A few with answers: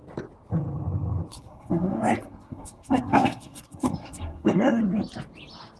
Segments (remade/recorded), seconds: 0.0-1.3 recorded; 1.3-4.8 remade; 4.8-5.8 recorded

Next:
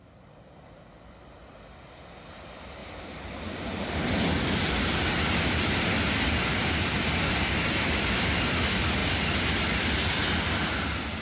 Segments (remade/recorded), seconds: 0.0-11.2 recorded

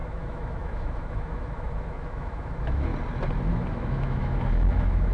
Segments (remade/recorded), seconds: 0.0-2.9 remade; 2.9-3.5 recorded; 3.5-5.1 remade